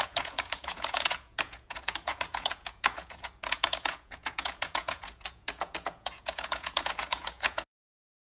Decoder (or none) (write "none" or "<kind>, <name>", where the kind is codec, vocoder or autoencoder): vocoder, Vocos